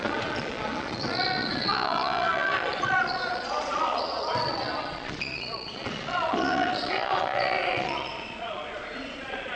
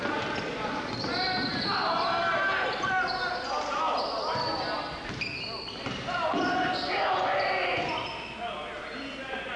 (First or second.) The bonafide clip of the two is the second